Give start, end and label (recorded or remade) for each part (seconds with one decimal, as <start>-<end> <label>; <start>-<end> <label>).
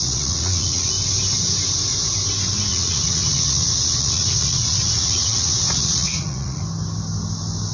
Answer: 0.0-0.9 remade; 0.9-2.7 recorded; 2.7-6.6 remade; 6.6-7.7 recorded